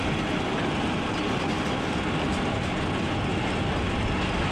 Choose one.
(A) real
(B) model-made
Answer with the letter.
A